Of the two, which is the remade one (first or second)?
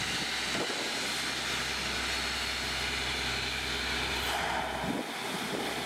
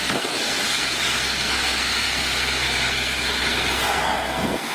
second